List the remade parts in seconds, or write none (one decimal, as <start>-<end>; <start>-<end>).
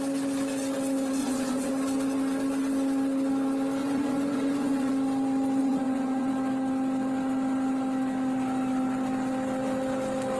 1.2-1.7; 3.8-4.9; 5.6-6.3